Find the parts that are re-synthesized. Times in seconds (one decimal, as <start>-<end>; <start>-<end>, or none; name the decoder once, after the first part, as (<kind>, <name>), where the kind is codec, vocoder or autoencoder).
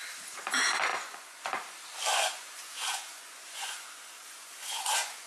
0.9-1.4 (vocoder, Vocos); 2.1-5.3